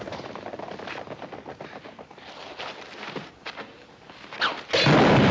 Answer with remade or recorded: recorded